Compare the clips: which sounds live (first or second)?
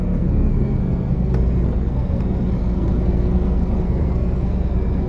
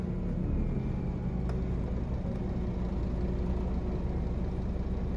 second